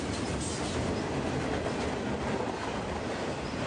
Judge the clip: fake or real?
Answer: real